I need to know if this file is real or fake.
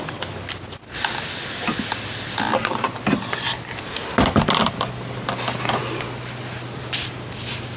real